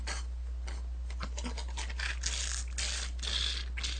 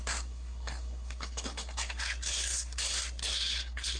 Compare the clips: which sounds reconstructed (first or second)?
second